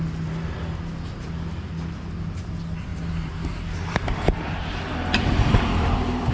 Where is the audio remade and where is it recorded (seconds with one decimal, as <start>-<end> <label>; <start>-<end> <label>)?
0.0-2.9 recorded; 2.9-6.3 remade